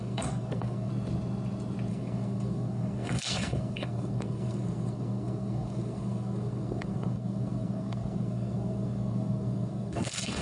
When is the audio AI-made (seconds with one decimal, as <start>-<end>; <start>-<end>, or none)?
0.0-0.9; 1.9-10.4